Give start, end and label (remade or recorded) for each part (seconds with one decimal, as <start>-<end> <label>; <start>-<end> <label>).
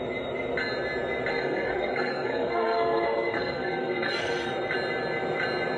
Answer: 0.0-1.3 recorded; 1.3-4.5 remade; 4.5-5.8 recorded